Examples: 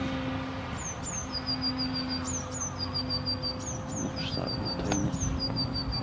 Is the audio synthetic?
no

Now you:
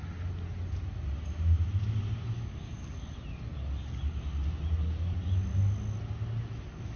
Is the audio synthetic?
no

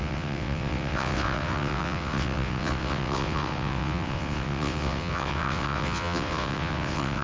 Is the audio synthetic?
yes